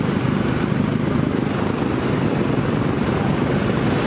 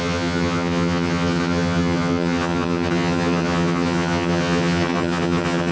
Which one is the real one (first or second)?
first